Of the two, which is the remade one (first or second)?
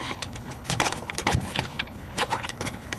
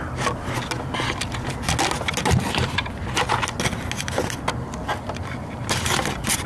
first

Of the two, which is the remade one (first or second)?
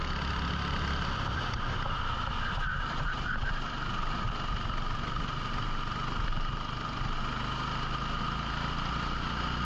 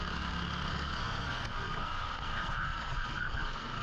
second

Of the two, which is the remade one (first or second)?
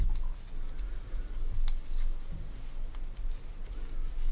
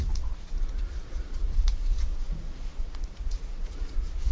second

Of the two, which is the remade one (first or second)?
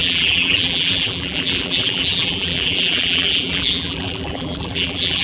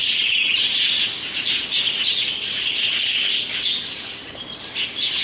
first